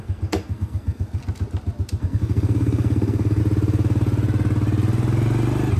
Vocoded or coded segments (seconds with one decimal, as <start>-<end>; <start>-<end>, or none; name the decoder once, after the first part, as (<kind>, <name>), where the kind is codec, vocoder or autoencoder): 0.0-1.2 (codec, SNAC); 2.0-3.4